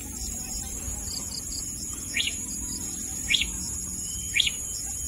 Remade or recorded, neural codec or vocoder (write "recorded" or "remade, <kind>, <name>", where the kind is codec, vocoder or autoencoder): remade, vocoder, Vocos